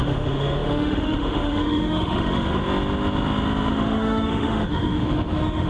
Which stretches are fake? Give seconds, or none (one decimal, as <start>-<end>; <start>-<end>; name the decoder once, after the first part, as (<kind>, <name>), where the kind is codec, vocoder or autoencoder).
0.0-2.6 (autoencoder, DAC-VAE); 3.7-5.7